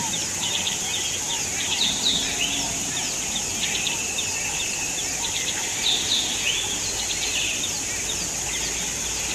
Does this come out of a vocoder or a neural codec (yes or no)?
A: no